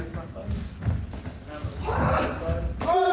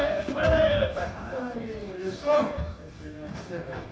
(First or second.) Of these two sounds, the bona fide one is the first